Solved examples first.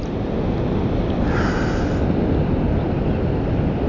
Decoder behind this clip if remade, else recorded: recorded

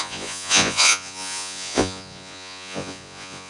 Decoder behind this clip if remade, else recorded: remade, vocoder, Vocos